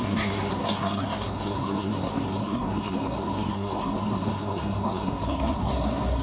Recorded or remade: remade